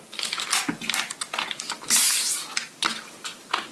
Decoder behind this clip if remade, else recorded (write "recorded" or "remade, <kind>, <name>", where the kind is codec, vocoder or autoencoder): recorded